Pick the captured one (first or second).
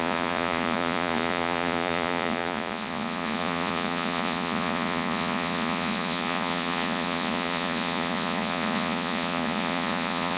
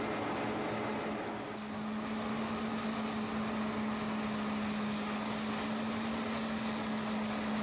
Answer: second